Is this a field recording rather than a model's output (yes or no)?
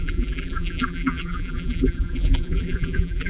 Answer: no